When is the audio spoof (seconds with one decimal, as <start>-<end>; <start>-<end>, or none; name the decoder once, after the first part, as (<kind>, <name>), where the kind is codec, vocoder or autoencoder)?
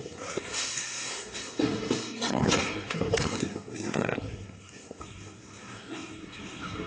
0.0-6.9 (codec, SNAC)